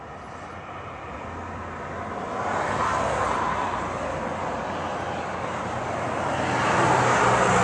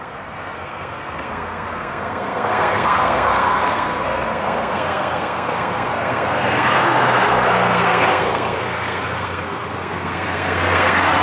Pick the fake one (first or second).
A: second